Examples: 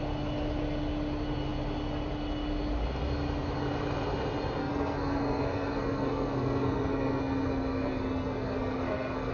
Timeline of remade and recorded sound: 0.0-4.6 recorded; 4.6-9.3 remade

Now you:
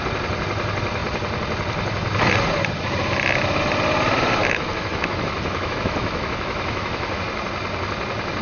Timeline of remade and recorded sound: 0.0-4.4 recorded; 4.4-7.2 remade; 7.2-8.4 recorded